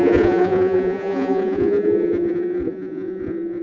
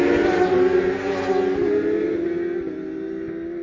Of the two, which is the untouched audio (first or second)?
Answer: second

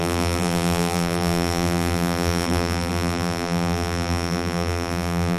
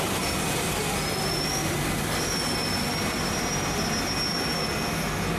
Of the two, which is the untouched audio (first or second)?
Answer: second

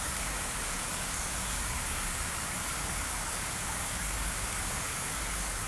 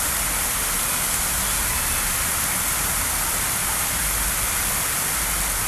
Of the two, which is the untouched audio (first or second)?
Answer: second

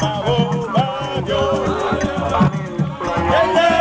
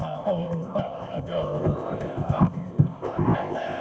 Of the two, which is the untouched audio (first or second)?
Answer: first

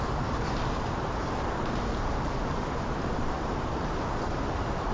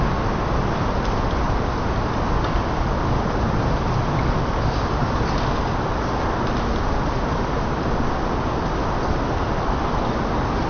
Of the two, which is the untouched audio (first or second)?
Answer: second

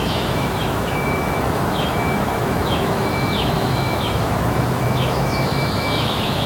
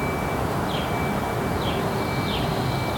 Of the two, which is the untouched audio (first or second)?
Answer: second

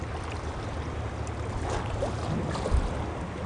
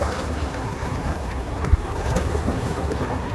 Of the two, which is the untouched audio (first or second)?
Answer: first